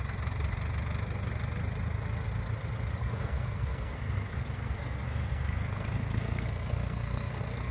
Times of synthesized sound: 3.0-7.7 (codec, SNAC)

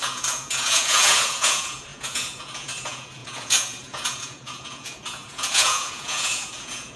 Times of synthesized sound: 0.0-7.0 (vocoder, Vocos)

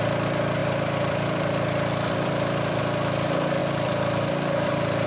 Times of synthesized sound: 0.6-2.8 (vocoder, BigVGAN v2); 3.6-5.1

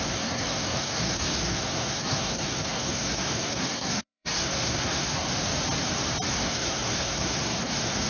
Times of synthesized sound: 0.0-5.3 (codec, SNAC); 6.3-8.1

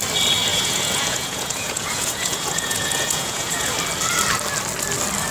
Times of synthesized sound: 0.5-3.7 (vocoder, Vocos)